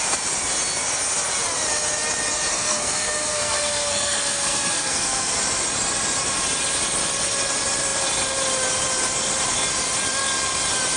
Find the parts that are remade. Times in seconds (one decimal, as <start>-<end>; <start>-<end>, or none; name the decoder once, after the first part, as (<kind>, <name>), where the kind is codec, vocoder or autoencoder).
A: 2.5-5.4 (codec, SNAC)